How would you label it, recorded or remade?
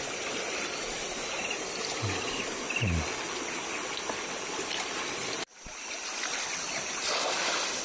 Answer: recorded